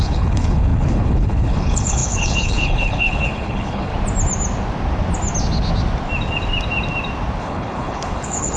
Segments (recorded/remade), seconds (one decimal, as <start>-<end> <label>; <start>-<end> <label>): 0.0-3.9 remade; 3.9-7.4 recorded; 7.4-8.6 remade